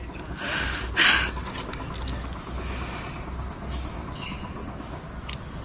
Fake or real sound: real